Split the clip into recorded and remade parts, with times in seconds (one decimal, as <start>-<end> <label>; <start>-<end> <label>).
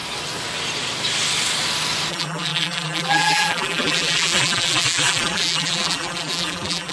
0.0-2.1 recorded; 2.1-6.9 remade